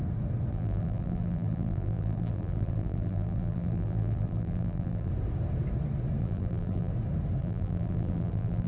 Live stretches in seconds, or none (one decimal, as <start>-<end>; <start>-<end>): 0.0-0.5; 5.1-6.2; 6.9-7.4